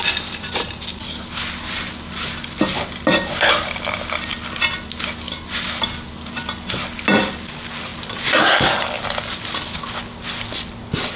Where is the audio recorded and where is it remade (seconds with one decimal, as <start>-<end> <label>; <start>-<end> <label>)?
0.0-11.2 recorded